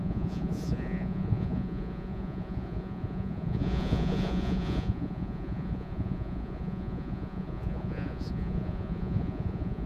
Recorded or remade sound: remade